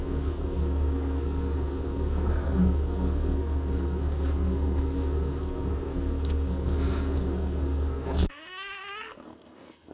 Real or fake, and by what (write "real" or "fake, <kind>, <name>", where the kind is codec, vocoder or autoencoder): fake, codec, SNAC